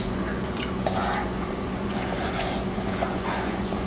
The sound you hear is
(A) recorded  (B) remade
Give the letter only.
B